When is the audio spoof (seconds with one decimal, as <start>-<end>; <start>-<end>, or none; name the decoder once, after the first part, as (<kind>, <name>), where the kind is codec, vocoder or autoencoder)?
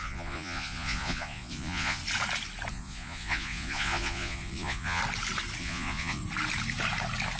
0.0-2.0 (vocoder, Vocos); 2.7-5.0; 5.6-6.2